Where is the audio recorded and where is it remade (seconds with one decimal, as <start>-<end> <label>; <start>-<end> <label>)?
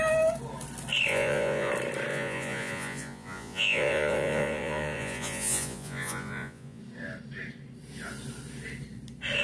0.0-1.1 recorded; 1.1-1.7 remade; 1.7-2.1 recorded; 2.1-6.8 remade; 6.8-9.4 recorded